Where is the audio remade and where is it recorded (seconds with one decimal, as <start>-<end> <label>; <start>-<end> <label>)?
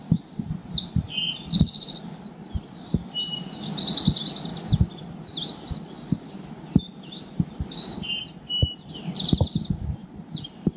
0.0-10.8 recorded